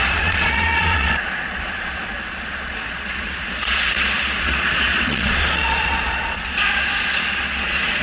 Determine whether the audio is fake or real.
fake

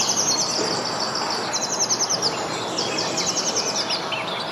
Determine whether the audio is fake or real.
real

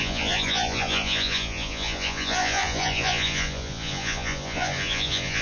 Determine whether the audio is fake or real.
fake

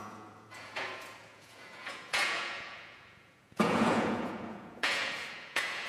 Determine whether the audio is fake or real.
fake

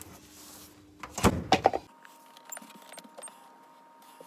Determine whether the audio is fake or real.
real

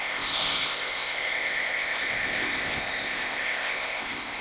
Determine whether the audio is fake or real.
fake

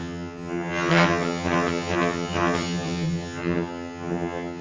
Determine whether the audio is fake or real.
fake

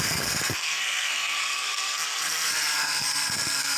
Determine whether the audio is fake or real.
fake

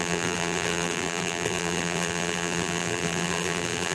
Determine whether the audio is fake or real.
fake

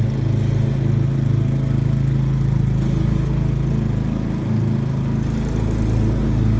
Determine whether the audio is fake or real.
real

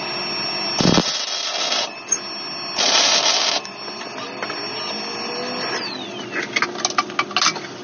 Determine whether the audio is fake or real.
real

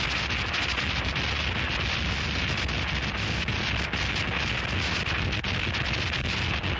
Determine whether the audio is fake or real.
real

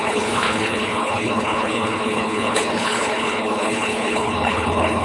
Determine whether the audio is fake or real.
fake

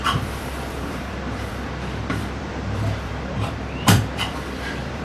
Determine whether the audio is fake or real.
fake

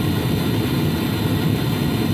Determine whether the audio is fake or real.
real